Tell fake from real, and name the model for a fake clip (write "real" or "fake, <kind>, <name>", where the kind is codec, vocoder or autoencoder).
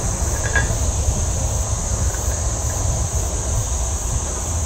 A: real